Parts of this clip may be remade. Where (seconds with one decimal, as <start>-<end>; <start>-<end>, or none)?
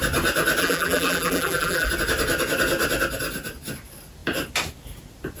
0.6-1.9